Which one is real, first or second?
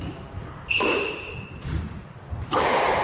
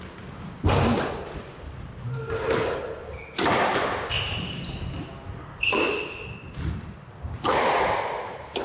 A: second